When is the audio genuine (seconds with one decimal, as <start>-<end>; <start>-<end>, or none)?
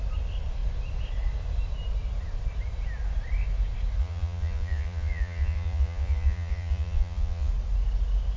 0.0-4.0; 7.5-8.4